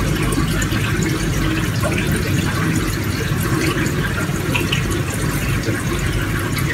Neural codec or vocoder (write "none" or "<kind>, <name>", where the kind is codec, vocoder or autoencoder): none